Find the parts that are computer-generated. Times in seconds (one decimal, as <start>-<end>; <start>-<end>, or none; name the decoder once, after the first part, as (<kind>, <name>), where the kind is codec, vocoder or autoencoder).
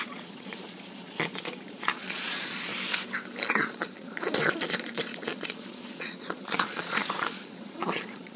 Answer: 0.0-2.7 (vocoder, Vocos); 3.5-8.4